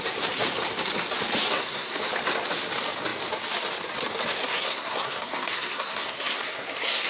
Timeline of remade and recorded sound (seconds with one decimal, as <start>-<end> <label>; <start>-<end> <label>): 0.0-1.5 recorded; 1.5-2.0 remade; 2.0-4.3 recorded; 4.3-7.1 remade